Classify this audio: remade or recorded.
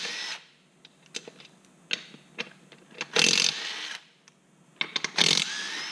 recorded